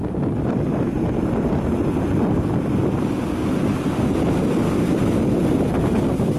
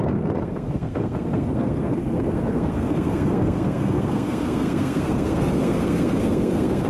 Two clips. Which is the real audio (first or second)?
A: first